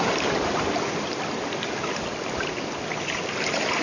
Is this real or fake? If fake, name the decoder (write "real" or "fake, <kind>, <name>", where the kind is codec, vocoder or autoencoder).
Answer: real